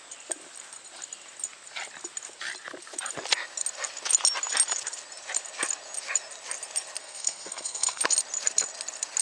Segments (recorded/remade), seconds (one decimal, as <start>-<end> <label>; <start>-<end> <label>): 0.0-7.0 recorded; 7.0-8.0 remade; 8.0-9.2 recorded